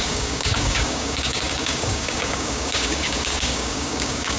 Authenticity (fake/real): fake